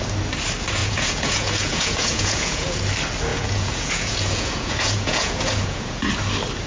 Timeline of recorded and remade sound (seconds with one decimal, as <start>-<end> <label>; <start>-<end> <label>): 0.0-0.8 recorded; 0.8-2.8 remade; 2.8-3.3 recorded; 3.3-6.1 remade; 6.1-6.7 recorded